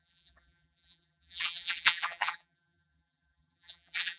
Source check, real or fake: fake